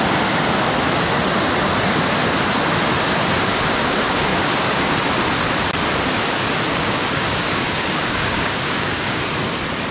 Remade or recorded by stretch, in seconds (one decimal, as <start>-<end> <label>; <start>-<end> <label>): 0.0-4.3 recorded; 4.3-4.9 remade; 4.9-6.7 recorded; 6.7-9.2 remade; 9.2-9.9 recorded